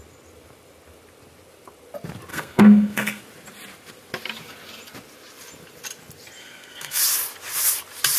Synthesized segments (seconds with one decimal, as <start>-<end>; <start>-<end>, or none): 2.3-3.2; 6.4-7.0

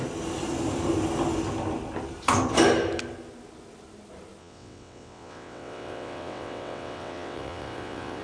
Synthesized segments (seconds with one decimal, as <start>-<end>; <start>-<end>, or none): 4.4-8.2

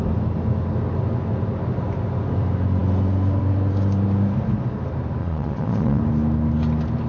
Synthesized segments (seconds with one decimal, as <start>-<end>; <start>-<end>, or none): 5.2-6.0